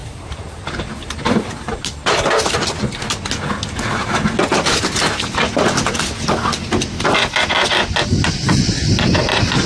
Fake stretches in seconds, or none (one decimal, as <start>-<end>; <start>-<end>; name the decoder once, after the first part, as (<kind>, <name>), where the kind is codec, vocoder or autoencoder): 0.0-3.0 (vocoder, BigVGAN v2)